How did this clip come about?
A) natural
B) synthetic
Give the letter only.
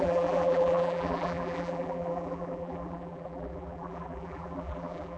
B